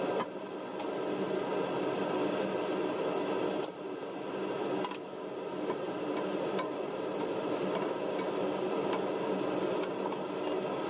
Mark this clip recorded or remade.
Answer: recorded